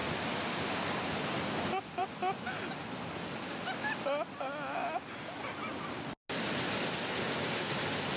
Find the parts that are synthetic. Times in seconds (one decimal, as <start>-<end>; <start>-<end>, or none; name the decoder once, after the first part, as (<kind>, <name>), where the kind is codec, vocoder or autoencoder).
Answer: none